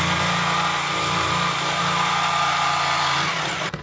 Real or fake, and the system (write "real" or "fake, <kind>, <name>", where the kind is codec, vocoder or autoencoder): fake, vocoder, BigVGAN v2